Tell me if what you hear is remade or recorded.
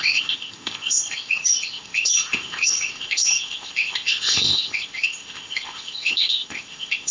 remade